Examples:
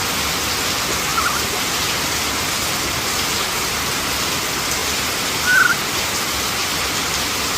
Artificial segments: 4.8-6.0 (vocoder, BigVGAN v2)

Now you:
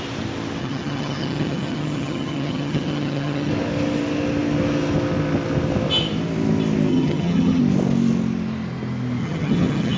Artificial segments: 0.6-3.5 (vocoder, HiFi-GAN); 6.9-7.6; 9.2-10.0

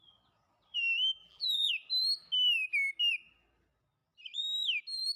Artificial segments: 1.2-1.7 (vocoder, BigVGAN v2)

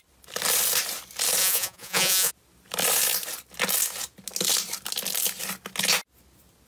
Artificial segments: 1.4-2.3 (vocoder, Vocos)